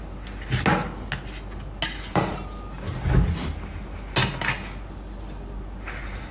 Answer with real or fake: real